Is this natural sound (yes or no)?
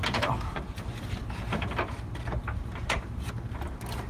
yes